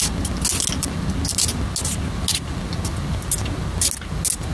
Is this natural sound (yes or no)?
yes